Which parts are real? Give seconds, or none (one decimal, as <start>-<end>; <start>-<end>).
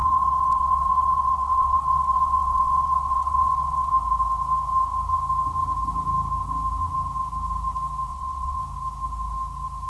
3.9-8.1; 8.6-9.9